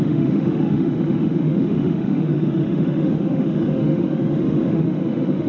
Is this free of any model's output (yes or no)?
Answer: no